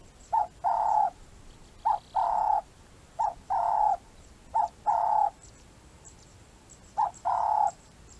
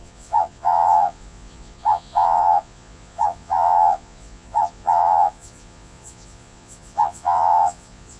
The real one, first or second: first